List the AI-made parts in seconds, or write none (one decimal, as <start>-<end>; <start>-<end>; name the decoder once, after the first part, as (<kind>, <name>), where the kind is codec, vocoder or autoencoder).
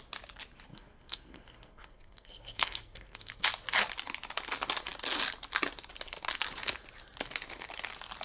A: 0.7-3.3 (codec, SNAC)